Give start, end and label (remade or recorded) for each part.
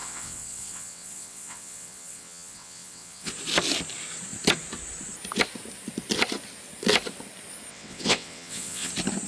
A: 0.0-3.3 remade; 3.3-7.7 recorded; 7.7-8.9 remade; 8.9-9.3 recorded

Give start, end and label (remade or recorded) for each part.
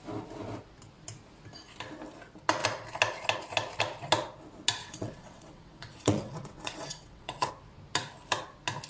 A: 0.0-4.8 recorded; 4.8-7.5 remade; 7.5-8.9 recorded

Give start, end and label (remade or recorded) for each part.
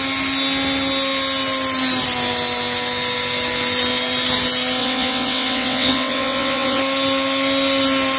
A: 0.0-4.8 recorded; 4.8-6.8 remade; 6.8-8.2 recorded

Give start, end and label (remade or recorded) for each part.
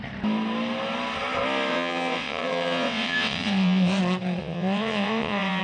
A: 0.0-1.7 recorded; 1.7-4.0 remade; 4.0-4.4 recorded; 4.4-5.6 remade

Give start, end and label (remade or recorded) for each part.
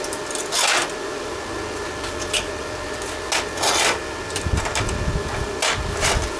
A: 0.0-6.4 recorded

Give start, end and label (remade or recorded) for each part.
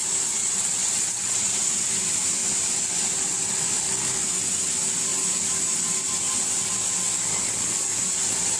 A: 0.0-0.4 recorded; 0.4-1.9 remade; 1.9-8.6 recorded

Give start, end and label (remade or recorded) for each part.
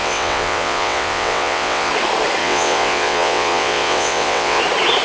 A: 0.0-1.9 remade; 1.9-2.4 recorded; 2.4-4.6 remade; 4.6-5.0 recorded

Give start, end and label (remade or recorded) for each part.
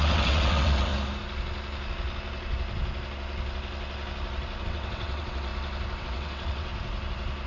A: 0.0-0.9 remade; 0.9-4.6 recorded; 4.6-5.5 remade; 5.5-6.0 recorded; 6.0-6.7 remade; 6.7-7.5 recorded